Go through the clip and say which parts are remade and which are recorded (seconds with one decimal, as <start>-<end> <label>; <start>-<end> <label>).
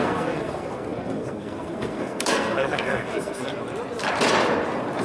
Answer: 0.0-3.5 remade; 3.5-5.0 recorded